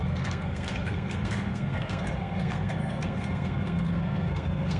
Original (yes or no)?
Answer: no